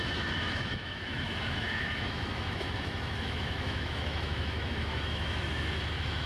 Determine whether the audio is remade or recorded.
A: remade